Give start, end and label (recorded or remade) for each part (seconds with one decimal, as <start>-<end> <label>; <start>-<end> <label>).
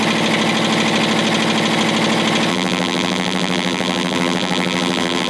0.0-2.5 recorded; 2.5-5.3 remade